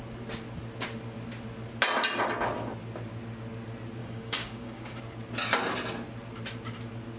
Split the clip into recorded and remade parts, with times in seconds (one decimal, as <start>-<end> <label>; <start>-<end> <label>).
0.0-4.0 recorded; 4.0-5.0 remade; 5.0-7.2 recorded